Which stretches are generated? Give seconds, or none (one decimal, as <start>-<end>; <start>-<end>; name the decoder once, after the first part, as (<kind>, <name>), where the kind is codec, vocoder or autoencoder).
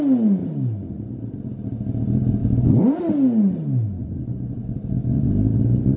2.4-3.0 (vocoder, Vocos); 4.0-5.3